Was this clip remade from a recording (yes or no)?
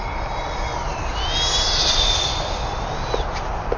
no